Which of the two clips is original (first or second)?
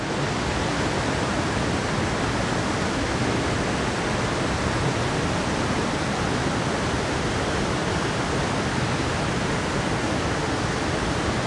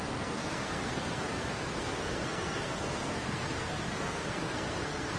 first